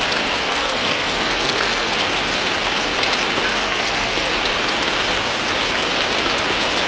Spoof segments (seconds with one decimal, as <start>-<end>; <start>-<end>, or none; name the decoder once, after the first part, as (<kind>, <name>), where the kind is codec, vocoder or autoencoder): 0.4-1.9 (codec, SNAC); 3.5-4.3